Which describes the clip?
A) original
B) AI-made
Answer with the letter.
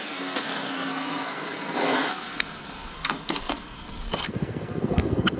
B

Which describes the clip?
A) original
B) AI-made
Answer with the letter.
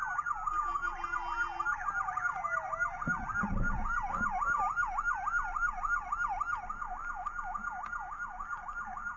A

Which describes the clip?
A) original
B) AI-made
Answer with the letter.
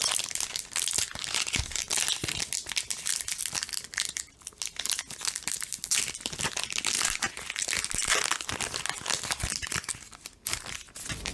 A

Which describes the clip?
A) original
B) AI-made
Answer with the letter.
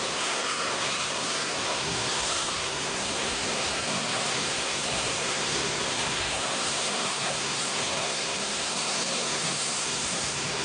B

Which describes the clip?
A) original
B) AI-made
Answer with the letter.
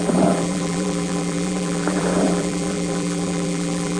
B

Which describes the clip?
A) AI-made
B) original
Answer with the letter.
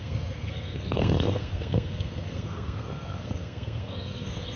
A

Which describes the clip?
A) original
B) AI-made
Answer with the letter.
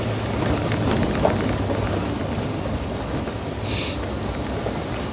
A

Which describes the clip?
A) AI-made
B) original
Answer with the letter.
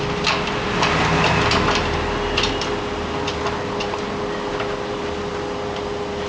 B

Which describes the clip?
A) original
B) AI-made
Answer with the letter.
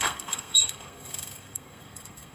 B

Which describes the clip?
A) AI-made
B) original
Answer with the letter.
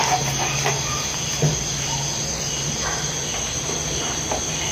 B